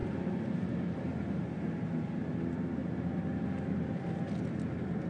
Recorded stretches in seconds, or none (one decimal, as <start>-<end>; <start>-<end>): 2.2-2.8; 4.2-5.1